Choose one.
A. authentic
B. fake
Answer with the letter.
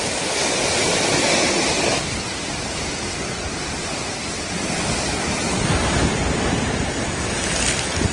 A